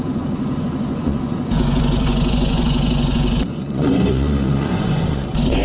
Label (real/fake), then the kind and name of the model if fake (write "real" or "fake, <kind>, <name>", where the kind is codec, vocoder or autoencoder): fake, vocoder, Vocos